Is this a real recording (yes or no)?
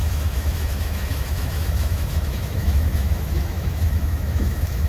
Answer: no